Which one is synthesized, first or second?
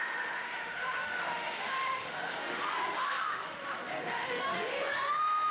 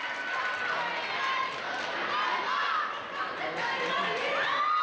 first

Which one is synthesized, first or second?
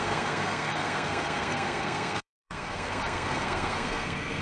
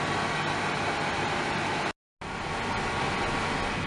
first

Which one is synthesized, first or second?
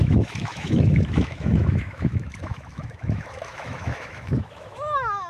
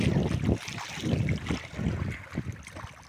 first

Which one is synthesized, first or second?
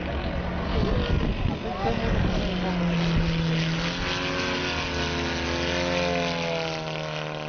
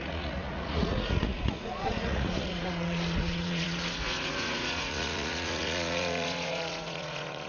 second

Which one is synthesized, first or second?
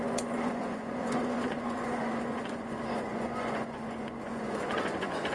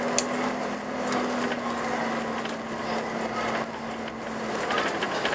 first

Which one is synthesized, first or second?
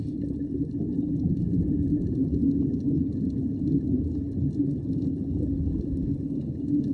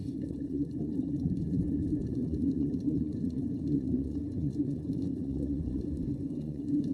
second